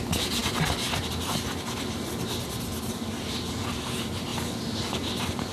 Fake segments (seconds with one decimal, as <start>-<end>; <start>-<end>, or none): none